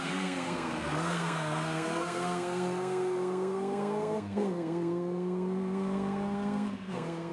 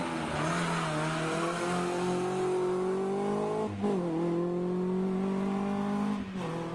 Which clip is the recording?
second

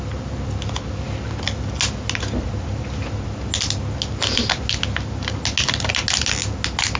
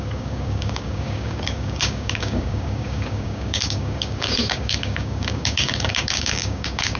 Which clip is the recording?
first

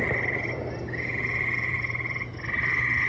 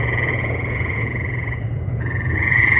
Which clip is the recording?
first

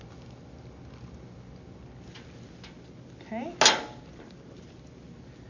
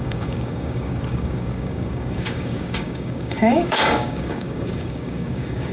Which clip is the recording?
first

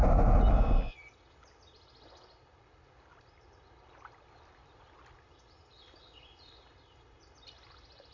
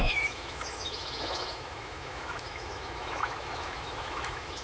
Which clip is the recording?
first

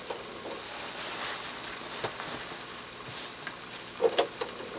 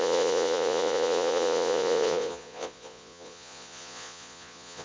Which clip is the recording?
first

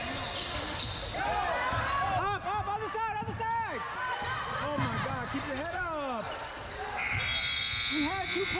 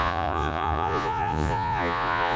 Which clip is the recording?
first